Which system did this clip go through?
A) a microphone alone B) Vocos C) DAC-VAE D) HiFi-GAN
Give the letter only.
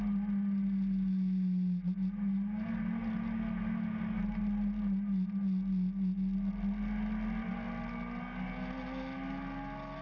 A